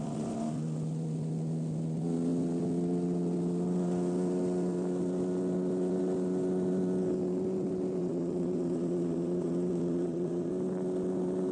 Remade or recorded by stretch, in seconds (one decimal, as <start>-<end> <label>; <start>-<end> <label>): 0.0-8.0 recorded; 8.0-10.5 remade; 10.5-11.5 recorded